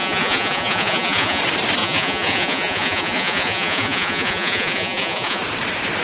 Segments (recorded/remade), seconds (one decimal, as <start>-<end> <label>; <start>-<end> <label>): 0.0-1.4 remade; 1.4-1.8 recorded; 1.8-5.4 remade; 5.4-6.0 recorded